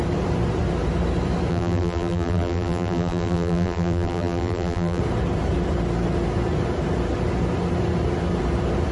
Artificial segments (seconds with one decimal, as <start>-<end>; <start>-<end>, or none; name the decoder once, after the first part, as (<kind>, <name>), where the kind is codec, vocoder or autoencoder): 1.5-5.0 (vocoder, BigVGAN v2)